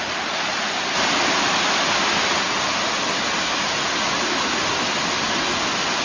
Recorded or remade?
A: recorded